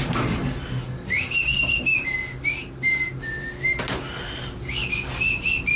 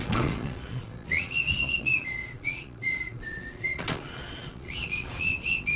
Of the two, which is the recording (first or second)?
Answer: first